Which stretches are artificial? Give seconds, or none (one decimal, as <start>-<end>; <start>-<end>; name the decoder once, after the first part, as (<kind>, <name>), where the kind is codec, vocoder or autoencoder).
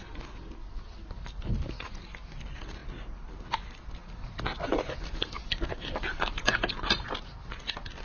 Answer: none